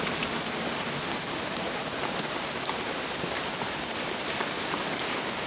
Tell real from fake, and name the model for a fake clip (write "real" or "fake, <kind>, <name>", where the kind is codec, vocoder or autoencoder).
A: real